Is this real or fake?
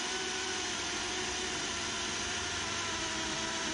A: real